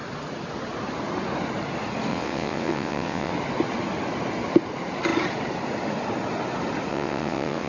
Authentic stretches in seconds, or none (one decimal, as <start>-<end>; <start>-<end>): 0.0-2.1; 3.3-6.9